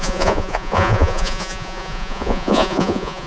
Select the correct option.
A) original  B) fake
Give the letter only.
B